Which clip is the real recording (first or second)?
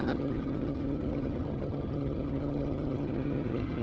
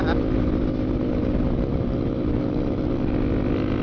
second